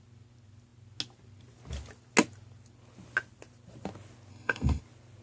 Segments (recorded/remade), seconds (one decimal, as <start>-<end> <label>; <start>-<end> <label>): 0.0-4.3 recorded; 4.3-4.8 remade; 4.8-5.2 recorded